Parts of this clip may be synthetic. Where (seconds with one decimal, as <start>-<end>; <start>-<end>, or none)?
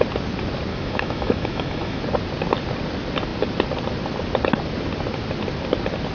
0.7-2.0